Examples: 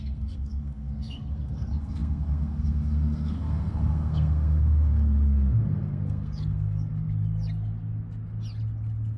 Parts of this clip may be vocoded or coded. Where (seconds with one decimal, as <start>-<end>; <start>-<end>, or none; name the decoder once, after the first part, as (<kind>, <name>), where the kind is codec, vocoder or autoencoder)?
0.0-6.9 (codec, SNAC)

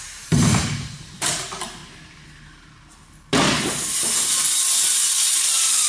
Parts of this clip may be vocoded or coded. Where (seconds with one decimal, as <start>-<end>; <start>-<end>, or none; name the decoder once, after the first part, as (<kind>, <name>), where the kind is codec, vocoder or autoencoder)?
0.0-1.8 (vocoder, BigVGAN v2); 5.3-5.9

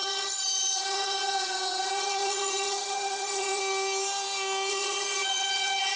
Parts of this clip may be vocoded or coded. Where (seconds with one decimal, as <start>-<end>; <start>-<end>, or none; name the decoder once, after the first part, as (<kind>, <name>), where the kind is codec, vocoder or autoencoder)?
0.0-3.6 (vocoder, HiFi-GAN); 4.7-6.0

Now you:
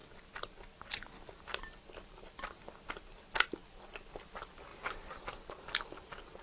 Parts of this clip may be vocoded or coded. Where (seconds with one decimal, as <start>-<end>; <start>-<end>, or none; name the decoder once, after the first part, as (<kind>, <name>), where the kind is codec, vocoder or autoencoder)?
none

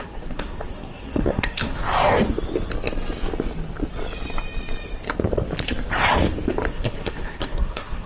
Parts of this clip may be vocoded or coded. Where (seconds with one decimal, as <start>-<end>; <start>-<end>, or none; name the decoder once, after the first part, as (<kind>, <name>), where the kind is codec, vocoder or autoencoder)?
0.0-1.8 (codec, SNAC); 6.7-8.1

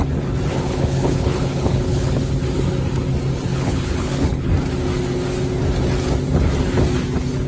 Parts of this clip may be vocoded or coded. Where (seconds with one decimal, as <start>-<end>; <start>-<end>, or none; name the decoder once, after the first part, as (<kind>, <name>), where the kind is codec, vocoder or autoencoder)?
0.5-2.3 (codec, HILCodec); 3.5-4.5

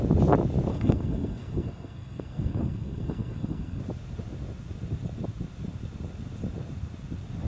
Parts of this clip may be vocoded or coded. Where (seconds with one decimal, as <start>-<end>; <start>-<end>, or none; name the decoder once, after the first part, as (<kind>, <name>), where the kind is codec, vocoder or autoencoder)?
0.7-3.8 (codec, SNAC)

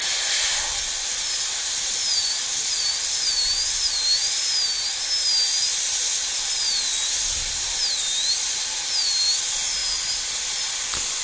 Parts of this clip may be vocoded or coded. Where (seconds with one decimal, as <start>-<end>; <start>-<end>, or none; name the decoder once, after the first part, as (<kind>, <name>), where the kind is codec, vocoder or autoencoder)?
2.2-3.3 (vocoder, BigVGAN v2); 9.8-10.4